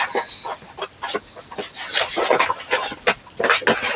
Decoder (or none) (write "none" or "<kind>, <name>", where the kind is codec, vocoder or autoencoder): none